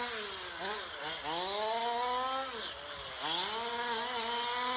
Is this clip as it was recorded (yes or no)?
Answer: yes